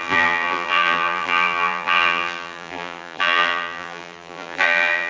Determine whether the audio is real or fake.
fake